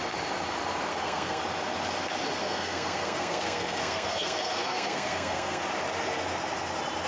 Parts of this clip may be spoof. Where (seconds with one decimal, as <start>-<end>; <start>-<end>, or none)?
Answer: 0.9-1.4; 2.4-5.6